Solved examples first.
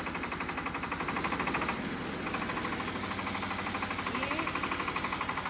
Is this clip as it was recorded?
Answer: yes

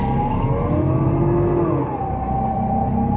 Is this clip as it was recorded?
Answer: yes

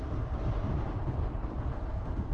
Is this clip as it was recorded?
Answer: no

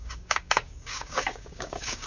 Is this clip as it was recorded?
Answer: no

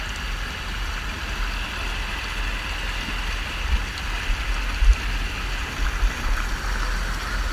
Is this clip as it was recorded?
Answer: yes